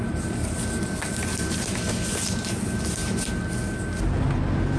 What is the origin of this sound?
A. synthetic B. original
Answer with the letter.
B